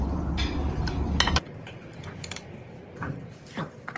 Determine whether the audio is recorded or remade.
remade